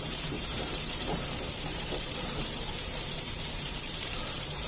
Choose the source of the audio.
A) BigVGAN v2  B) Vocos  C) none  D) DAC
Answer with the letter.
A